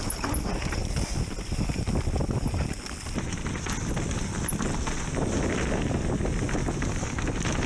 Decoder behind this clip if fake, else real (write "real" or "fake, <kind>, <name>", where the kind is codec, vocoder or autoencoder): real